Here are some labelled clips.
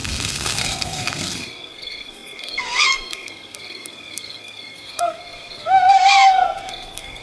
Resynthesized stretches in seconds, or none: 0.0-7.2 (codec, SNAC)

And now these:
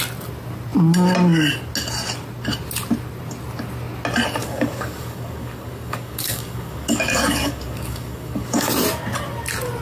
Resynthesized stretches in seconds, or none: 4.4-8.7 (codec, DAC)